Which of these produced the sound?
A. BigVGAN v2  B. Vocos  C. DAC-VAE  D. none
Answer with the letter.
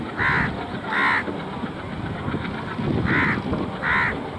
A